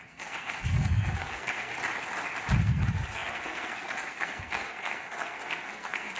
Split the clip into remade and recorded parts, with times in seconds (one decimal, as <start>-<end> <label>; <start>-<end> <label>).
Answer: 0.0-1.7 remade; 1.7-2.6 recorded; 2.6-6.2 remade